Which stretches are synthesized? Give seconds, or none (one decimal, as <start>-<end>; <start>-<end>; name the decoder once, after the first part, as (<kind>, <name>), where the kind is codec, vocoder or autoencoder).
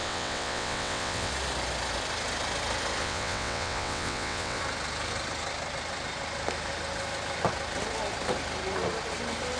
0.0-1.3 (vocoder, WaveNeXt); 3.0-4.6